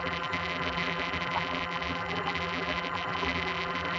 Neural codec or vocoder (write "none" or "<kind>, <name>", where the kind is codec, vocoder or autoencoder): vocoder, BigVGAN v2